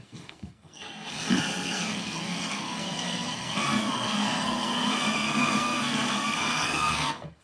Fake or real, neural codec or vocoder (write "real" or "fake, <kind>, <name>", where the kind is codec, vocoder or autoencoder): fake, codec, SNAC